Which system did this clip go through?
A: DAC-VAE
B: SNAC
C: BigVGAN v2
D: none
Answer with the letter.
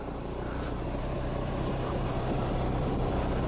C